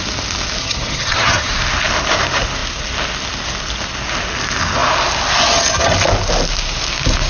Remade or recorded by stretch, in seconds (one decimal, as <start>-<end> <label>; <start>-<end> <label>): 0.0-0.6 recorded; 0.6-1.5 remade; 1.5-7.3 recorded